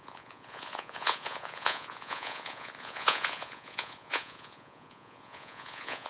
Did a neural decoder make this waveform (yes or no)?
yes